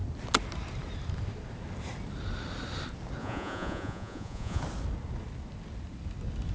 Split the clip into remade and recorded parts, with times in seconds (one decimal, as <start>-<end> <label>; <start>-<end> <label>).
0.0-3.2 recorded; 3.2-4.6 remade; 4.6-6.5 recorded